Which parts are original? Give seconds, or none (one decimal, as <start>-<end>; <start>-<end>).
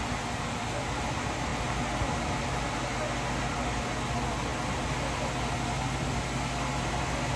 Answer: 0.0-7.4